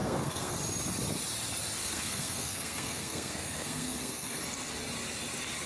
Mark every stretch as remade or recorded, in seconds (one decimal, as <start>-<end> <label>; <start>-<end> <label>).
0.0-0.6 remade; 0.6-1.8 recorded; 1.8-4.4 remade; 4.4-5.7 recorded